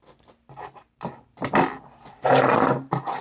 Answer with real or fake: real